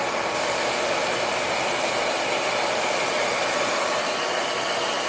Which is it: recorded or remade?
recorded